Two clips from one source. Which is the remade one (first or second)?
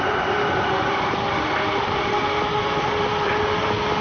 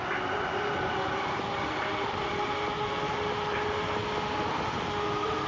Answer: first